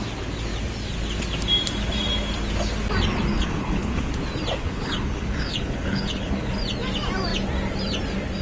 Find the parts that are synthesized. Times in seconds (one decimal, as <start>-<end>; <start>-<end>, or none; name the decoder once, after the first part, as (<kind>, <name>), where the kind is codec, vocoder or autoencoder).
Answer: 3.3-4.1 (codec, HILCodec); 4.6-6.5